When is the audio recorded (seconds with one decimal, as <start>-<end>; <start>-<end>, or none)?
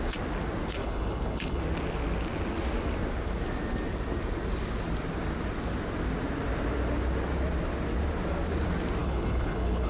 0.0-0.8; 1.6-9.0